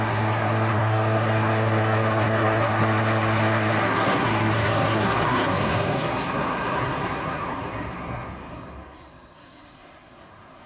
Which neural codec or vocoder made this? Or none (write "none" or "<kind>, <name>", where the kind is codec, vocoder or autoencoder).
codec, SNAC